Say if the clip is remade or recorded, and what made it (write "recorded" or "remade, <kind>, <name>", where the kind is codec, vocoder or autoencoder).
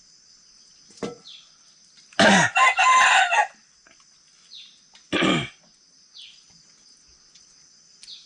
recorded